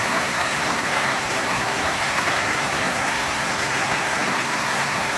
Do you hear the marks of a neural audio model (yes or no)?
yes